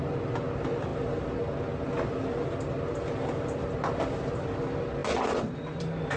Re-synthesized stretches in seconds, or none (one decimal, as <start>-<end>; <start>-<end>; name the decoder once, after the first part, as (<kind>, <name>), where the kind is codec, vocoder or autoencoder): none